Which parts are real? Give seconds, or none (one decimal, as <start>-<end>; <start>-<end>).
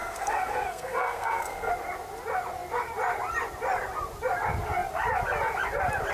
1.7-6.1